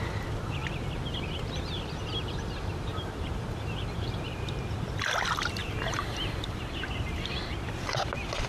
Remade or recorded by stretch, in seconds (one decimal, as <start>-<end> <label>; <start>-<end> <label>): 0.0-2.9 recorded; 2.9-4.9 remade; 4.9-5.6 recorded; 5.6-7.3 remade; 7.3-8.5 recorded